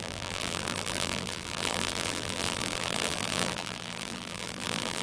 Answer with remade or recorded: remade